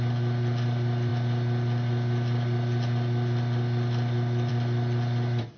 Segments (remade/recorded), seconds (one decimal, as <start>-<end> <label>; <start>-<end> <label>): 0.0-5.6 recorded